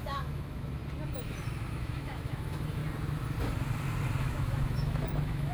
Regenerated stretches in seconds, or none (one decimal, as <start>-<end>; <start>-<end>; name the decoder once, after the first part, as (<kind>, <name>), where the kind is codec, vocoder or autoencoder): 0.0-0.8 (autoencoder, DAC-VAE); 1.7-2.8; 4.2-5.5